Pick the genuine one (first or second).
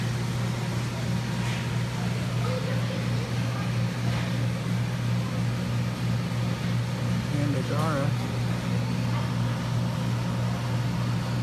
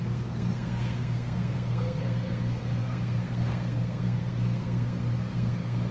first